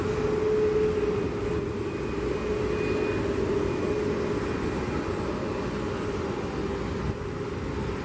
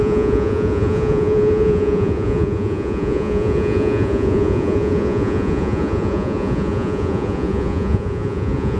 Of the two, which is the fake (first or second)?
second